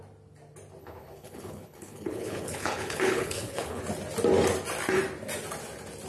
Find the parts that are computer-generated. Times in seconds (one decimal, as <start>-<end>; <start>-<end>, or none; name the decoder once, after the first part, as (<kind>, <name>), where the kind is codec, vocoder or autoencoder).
0.8-3.8 (codec, HILCodec)